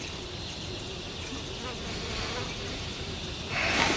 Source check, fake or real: real